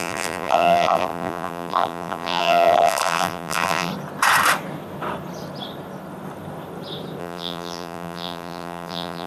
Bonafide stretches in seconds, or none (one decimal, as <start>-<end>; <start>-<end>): 3.9-7.2